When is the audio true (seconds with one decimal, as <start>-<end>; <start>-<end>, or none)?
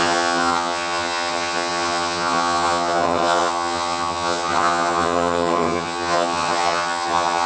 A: none